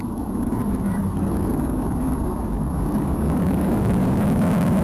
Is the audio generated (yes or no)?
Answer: yes